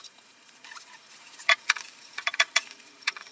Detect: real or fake fake